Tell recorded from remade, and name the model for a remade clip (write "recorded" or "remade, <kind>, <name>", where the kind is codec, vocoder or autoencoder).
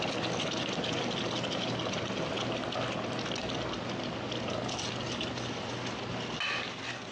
recorded